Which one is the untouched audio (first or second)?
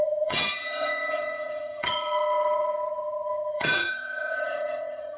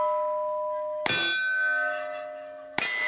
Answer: second